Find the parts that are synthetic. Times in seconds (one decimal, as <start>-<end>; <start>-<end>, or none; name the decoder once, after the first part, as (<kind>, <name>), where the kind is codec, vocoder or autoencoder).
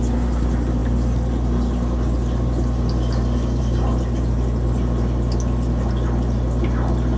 none